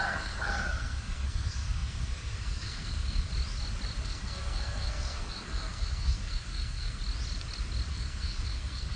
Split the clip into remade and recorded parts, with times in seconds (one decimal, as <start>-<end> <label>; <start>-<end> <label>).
0.0-3.3 remade; 3.3-4.0 recorded; 4.0-7.0 remade; 7.0-7.9 recorded; 7.9-9.0 remade